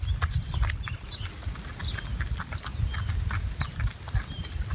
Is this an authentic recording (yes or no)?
yes